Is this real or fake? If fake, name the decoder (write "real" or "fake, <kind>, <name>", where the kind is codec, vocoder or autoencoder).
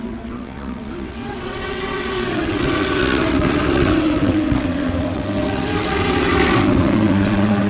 fake, vocoder, WaveNeXt